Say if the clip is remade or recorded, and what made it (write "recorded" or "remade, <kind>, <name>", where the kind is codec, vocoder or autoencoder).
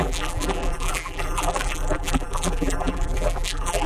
remade, vocoder, BigVGAN v2